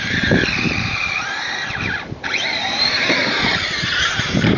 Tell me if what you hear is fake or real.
fake